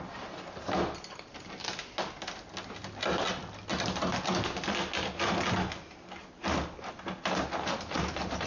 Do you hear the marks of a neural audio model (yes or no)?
no